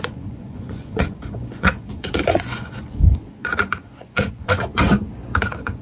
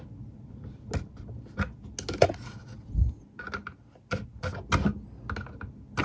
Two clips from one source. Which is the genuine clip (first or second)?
second